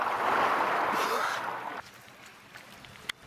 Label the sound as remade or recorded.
recorded